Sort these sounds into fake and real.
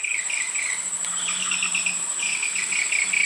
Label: real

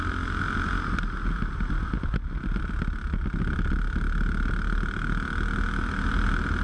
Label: real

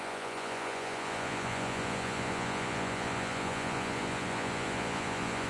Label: fake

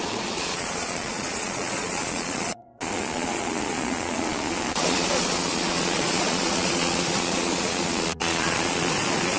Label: fake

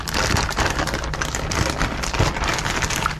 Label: real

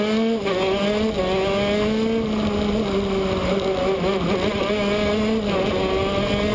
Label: real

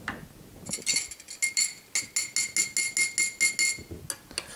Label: real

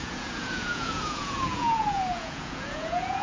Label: fake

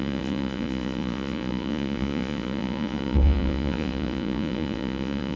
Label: fake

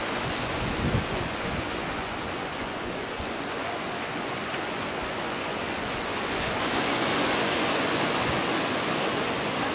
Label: fake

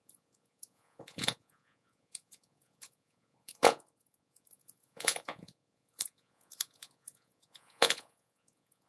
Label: fake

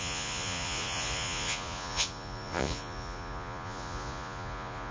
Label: fake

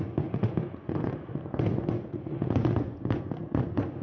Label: fake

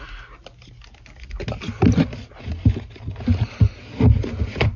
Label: real